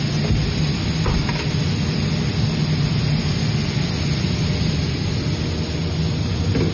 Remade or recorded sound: recorded